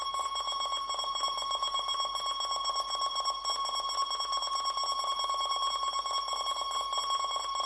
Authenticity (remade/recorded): recorded